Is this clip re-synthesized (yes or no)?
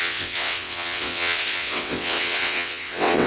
yes